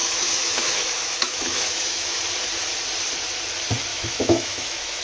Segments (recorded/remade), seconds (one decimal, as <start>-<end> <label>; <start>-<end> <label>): 0.0-2.2 remade; 2.2-3.9 recorded; 3.9-5.0 remade